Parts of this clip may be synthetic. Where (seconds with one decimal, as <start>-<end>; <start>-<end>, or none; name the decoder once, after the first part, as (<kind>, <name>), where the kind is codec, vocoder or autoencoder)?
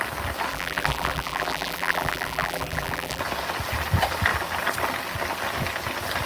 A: 0.5-3.2 (vocoder, BigVGAN v2)